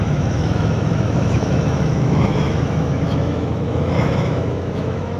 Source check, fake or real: fake